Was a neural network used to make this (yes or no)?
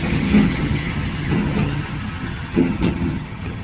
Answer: yes